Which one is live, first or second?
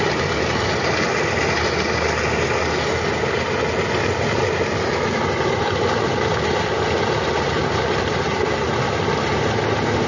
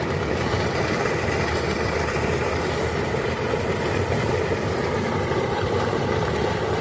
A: first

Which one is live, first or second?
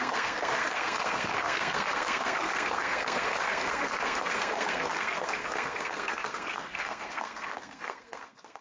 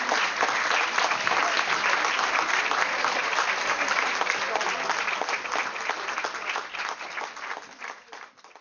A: second